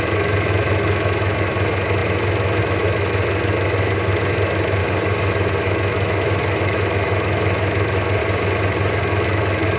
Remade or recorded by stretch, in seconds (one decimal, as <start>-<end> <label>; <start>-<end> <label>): 0.0-4.8 remade; 4.8-5.5 recorded; 5.5-8.2 remade; 8.2-9.0 recorded; 9.0-9.8 remade